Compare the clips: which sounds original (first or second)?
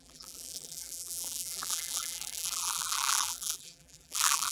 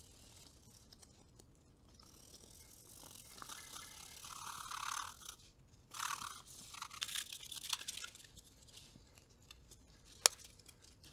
second